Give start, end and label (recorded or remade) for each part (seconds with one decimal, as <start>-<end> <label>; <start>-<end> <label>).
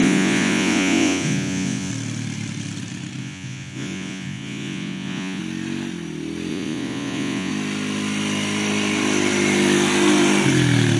0.0-1.9 remade; 1.9-3.2 recorded; 3.2-5.4 remade; 5.4-6.5 recorded; 6.5-7.5 remade; 7.5-11.0 recorded